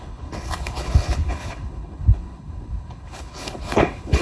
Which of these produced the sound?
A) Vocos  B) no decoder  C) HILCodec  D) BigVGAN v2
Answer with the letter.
C